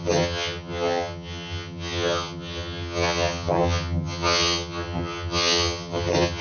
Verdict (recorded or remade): remade